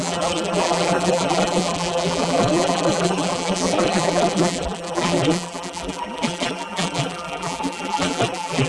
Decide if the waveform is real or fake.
fake